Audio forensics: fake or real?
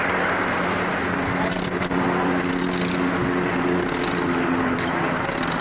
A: real